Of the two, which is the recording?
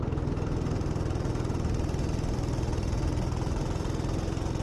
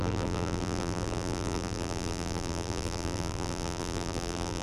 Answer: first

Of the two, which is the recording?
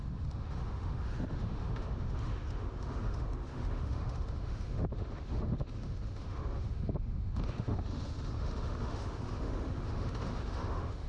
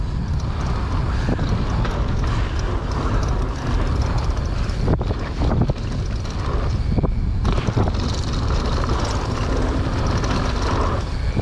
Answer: second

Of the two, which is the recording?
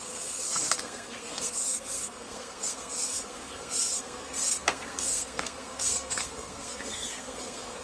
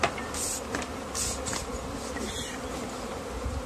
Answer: second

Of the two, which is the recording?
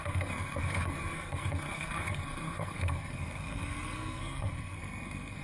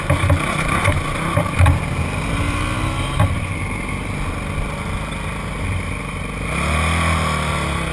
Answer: second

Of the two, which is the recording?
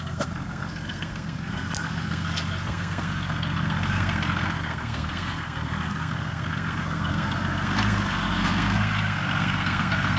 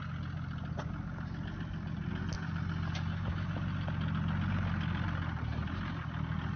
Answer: second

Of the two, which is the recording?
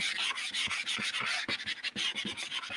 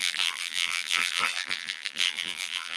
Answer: first